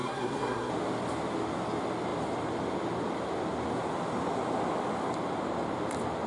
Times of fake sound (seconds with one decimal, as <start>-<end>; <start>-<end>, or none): 0.0-0.7